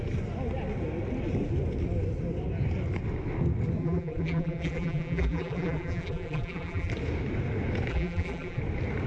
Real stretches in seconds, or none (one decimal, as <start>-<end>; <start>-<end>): 0.0-3.8; 6.9-7.9; 8.6-9.1